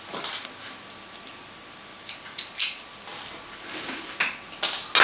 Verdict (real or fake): real